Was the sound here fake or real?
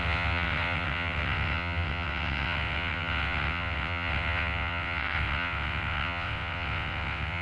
fake